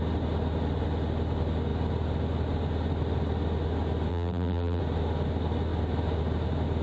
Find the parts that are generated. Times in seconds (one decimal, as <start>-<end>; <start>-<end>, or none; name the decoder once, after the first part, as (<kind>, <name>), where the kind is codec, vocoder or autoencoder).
4.1-4.8 (vocoder, BigVGAN v2)